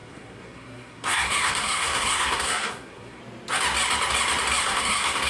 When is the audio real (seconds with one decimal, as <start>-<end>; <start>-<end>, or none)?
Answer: 3.2-4.6